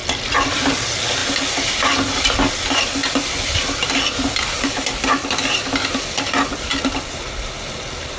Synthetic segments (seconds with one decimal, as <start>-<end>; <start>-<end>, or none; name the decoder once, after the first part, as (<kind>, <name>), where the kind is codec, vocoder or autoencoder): 0.5-1.2 (vocoder, BigVGAN v2); 2.6-8.2